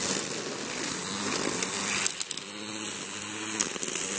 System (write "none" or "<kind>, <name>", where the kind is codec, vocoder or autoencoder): none